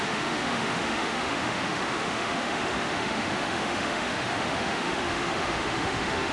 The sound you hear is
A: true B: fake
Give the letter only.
B